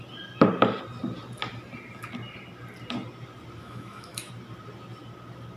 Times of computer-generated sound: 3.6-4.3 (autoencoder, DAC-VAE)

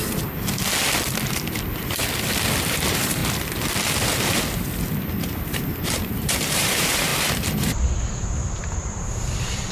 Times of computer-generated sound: 2.6-3.2 (vocoder, BigVGAN v2); 5.8-9.7

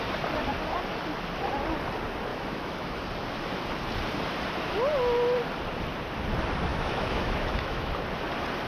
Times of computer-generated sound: 2.3-3.0 (autoencoder, DAC-VAE); 6.7-7.9

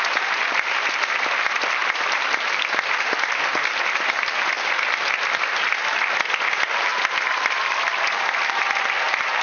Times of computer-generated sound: none

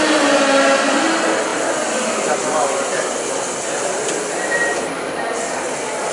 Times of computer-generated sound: none

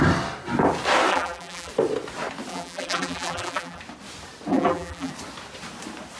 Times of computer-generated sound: 1.1-1.7 (vocoder, BigVGAN v2); 2.5-3.8; 4.5-5.1

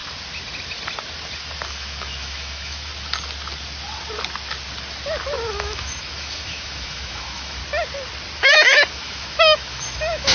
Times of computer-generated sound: 1.7-2.9 (autoencoder, DAC-VAE); 5.5-7.6; 8.4-10.3